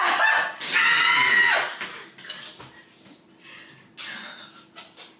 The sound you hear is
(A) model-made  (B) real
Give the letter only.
B